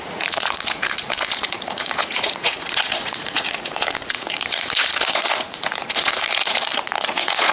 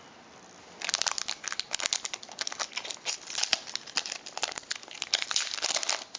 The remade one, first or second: first